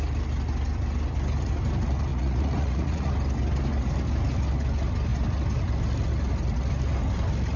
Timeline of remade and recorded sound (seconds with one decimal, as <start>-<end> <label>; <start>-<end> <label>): 0.0-2.1 recorded; 2.1-3.1 remade; 3.1-7.6 recorded

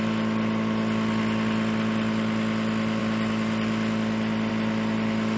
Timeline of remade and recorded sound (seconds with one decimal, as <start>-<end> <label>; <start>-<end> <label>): 0.0-5.4 recorded

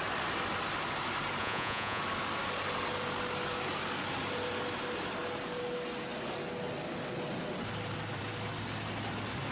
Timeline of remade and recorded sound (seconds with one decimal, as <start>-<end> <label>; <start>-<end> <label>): 0.0-1.4 recorded; 1.4-2.0 remade; 2.0-9.5 recorded

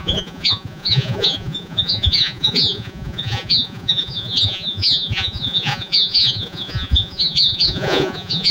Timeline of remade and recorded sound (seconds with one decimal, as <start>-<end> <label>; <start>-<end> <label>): 0.0-8.5 remade

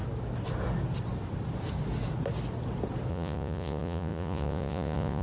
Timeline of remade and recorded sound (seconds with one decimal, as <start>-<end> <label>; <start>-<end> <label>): 0.0-3.1 recorded; 3.1-5.2 remade

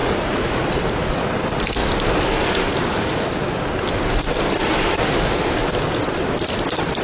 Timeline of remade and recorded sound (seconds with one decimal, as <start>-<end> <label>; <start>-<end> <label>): 0.0-0.8 remade; 0.8-7.0 recorded

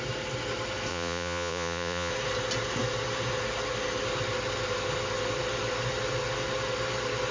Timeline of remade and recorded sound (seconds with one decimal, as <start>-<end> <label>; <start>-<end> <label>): 0.0-0.9 recorded; 0.9-2.1 remade; 2.1-7.3 recorded